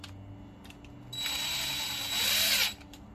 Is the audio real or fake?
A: real